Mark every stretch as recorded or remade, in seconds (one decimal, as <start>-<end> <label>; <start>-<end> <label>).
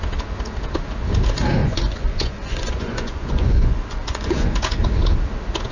0.0-1.6 recorded; 1.6-4.5 remade; 4.5-5.7 recorded